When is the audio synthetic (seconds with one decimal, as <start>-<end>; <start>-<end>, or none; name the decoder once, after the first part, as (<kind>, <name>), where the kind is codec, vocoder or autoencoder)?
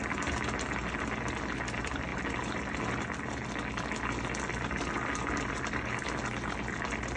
none